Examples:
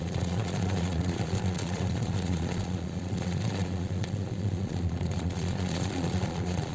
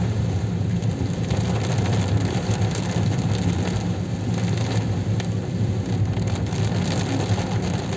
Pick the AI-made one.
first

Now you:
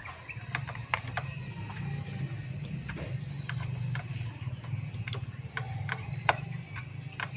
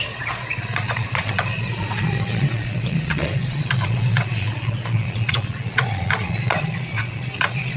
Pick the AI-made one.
second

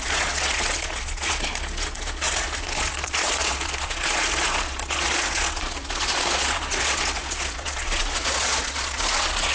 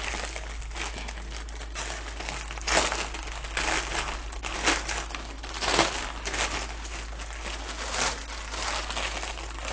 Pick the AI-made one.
first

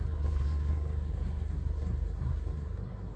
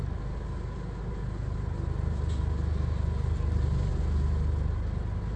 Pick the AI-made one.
first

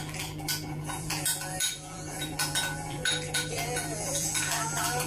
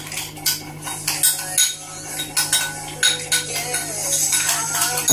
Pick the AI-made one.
first